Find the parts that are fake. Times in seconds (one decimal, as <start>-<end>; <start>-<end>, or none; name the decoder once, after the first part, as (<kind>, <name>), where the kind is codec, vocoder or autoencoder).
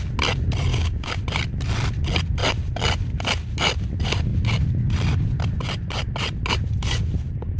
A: 0.7-1.2 (codec, DAC)